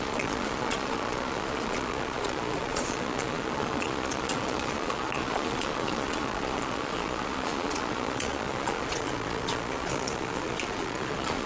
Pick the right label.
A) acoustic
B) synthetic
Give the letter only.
B